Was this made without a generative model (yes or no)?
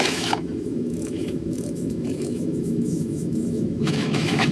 no